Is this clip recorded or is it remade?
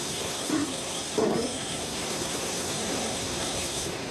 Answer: remade